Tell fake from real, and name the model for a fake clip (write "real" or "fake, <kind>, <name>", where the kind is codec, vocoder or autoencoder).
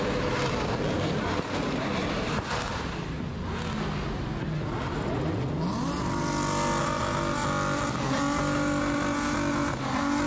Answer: real